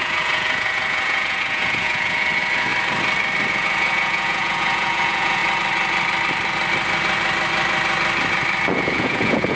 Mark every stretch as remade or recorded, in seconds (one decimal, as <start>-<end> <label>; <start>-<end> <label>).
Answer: 0.0-2.7 remade; 2.7-3.5 recorded; 3.5-5.4 remade; 5.4-8.7 recorded; 8.7-9.6 remade